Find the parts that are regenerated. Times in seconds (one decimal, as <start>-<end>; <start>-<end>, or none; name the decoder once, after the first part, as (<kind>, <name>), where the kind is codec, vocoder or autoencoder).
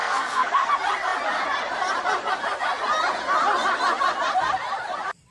0.0-0.7 (codec, SNAC)